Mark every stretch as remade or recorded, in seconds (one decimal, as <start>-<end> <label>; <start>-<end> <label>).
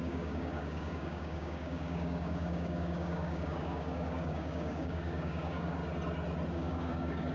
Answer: 0.0-5.8 remade; 5.8-6.5 recorded; 6.5-7.3 remade